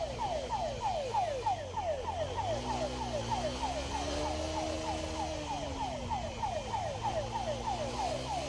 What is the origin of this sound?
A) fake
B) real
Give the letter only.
B